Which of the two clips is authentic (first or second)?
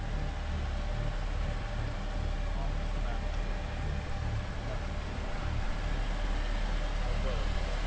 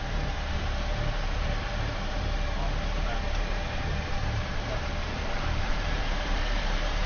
first